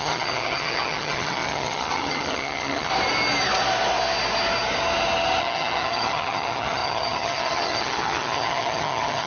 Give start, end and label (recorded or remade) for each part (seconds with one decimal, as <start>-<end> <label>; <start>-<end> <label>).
0.0-2.9 remade; 2.9-5.4 recorded; 5.4-9.3 remade